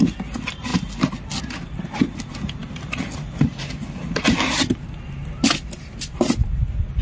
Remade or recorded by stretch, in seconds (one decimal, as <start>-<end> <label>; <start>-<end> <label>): 0.0-7.0 recorded